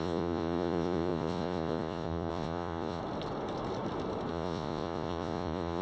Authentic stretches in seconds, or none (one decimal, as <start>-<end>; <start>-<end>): 3.0-4.3